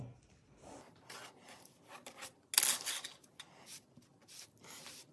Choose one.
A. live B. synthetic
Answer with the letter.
A